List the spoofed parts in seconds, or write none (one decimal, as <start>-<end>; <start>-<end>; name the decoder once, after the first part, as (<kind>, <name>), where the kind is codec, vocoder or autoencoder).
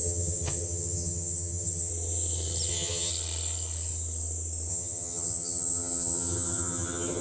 0.0-1.9 (vocoder, HiFi-GAN); 2.7-3.1; 4.7-7.2